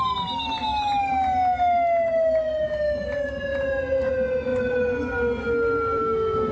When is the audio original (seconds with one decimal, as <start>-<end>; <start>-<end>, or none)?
0.0-6.5